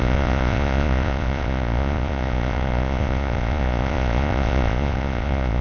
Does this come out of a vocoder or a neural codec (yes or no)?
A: yes